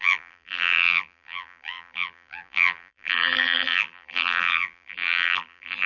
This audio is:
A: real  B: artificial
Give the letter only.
B